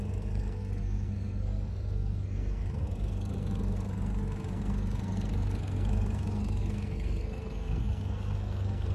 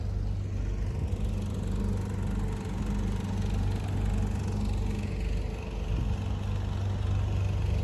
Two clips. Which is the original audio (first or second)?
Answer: second